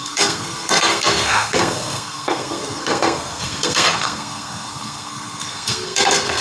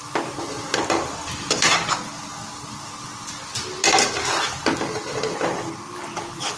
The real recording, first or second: second